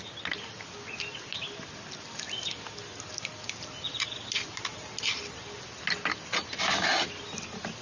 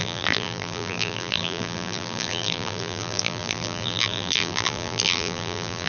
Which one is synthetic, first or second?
second